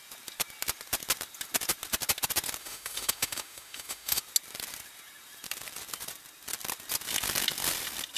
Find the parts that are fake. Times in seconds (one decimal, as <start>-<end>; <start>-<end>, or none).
2.6-4.2